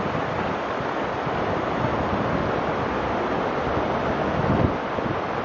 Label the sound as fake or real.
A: real